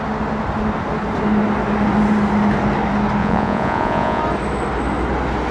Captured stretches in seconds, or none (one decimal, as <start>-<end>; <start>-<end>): 0.0-3.2; 4.2-5.5